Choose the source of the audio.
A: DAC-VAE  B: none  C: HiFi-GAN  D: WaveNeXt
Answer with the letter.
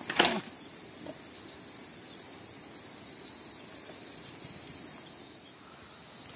B